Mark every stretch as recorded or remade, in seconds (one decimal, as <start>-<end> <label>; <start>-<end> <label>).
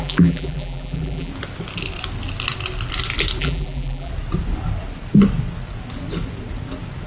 0.0-1.3 remade; 1.3-3.4 recorded; 3.4-4.1 remade; 4.1-7.1 recorded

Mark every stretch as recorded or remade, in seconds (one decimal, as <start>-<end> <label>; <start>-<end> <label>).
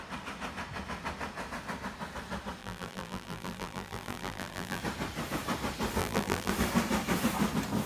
0.0-2.6 recorded; 2.6-4.8 remade; 4.8-6.0 recorded; 6.0-6.5 remade; 6.5-7.9 recorded